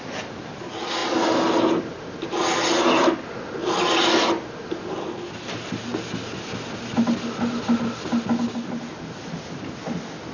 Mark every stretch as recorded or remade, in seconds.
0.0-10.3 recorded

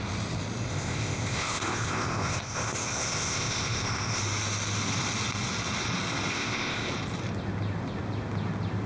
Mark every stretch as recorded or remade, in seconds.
0.0-0.7 recorded; 0.7-4.2 remade; 4.2-6.3 recorded; 6.3-6.9 remade; 6.9-8.9 recorded

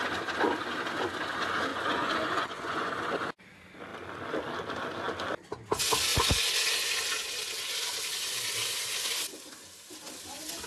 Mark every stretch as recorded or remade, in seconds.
0.0-1.7 recorded; 1.7-2.9 remade; 2.9-10.7 recorded

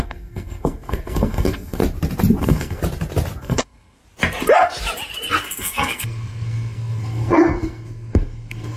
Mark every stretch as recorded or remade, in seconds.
0.0-1.8 remade; 1.8-2.4 recorded; 2.4-2.8 remade; 2.8-3.4 recorded; 3.4-4.0 remade; 4.0-5.4 recorded; 5.4-8.8 remade